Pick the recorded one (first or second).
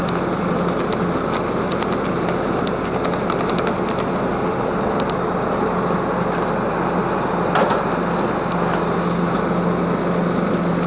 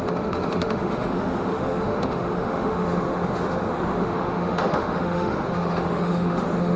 first